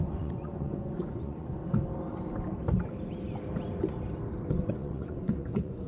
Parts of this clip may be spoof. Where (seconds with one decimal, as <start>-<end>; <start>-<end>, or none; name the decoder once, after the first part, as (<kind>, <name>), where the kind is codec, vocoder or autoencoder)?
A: 0.0-1.6 (vocoder, Vocos); 4.5-5.9